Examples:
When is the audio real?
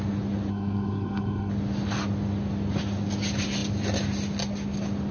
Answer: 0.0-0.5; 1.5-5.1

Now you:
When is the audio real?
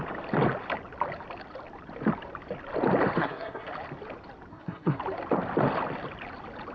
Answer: 0.0-3.2; 3.7-4.5; 5.0-6.7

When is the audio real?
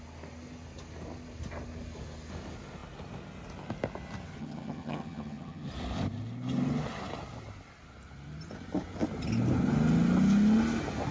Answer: 0.0-4.4; 5.7-11.1